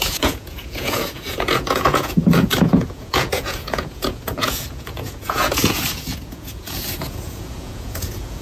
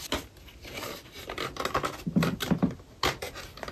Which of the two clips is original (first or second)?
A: second